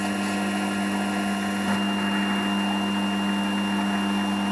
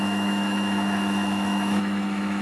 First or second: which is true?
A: first